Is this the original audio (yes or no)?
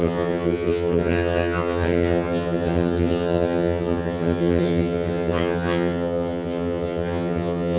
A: no